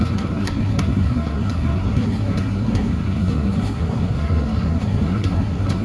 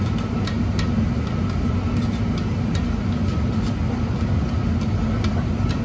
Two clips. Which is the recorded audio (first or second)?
second